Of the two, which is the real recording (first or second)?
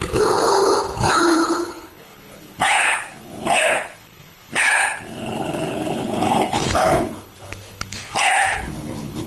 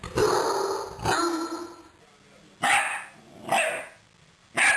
second